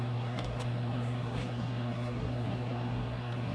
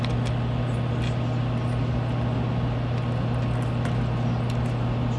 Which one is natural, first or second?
second